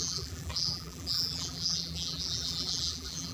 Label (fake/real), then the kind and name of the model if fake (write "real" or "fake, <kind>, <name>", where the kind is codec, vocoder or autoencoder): fake, vocoder, BigVGAN v2